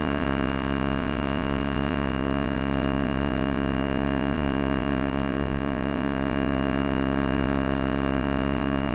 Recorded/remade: remade